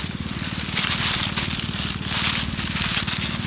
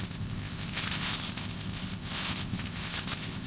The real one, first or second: first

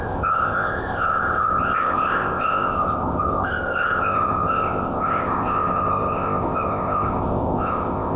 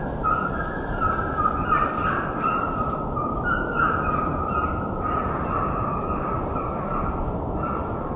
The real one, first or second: second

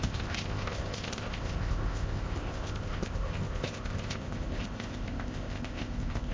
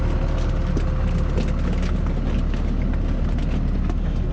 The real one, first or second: second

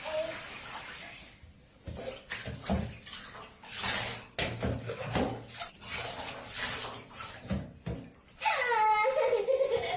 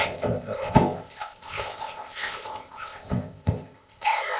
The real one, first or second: first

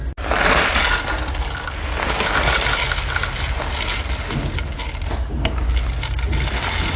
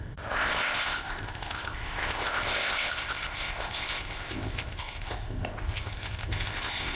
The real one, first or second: first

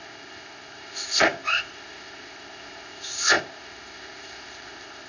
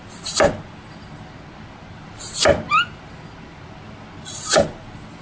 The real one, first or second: second